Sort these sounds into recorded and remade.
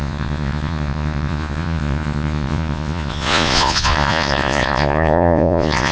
remade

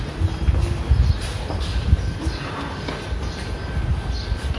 recorded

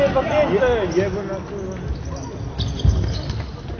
recorded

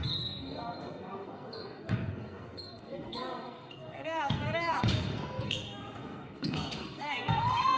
remade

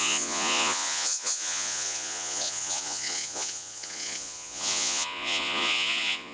remade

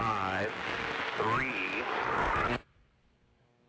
remade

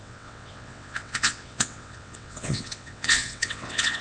remade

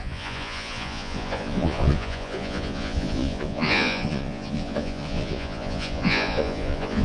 remade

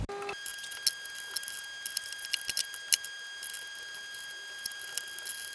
recorded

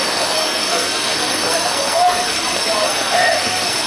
remade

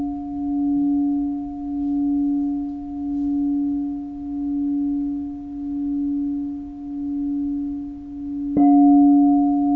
recorded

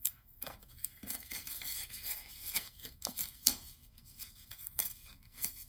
remade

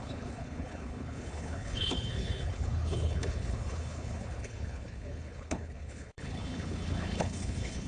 remade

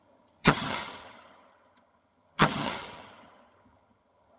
remade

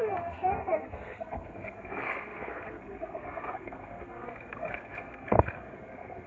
remade